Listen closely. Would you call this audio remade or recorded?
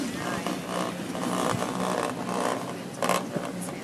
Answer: recorded